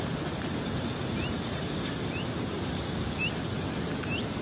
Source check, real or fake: real